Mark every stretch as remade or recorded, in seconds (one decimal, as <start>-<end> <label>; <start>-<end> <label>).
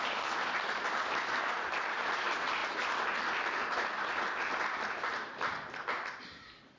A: 0.0-6.8 recorded